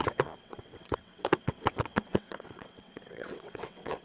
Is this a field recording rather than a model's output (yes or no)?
no